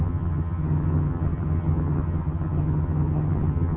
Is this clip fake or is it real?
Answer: fake